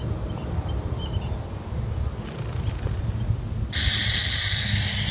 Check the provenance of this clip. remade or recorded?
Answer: recorded